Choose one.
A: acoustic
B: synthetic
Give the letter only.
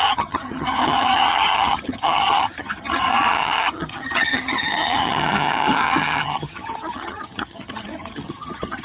B